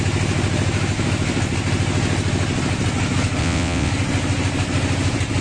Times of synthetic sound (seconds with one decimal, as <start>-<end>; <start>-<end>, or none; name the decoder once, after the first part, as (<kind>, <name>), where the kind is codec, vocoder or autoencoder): 3.4-3.9 (vocoder, WaveNeXt)